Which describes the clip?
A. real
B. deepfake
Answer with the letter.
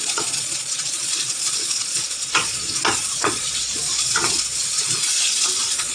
B